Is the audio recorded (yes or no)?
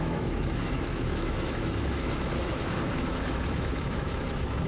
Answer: no